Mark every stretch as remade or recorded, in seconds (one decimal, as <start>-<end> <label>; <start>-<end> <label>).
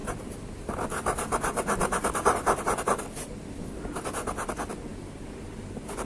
0.0-3.7 remade; 3.7-6.1 recorded